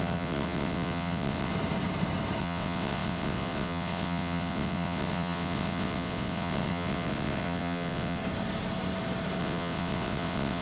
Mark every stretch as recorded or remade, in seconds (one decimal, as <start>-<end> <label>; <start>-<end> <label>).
0.0-1.5 remade; 1.5-2.4 recorded; 2.4-8.2 remade; 8.2-9.4 recorded; 9.4-10.6 remade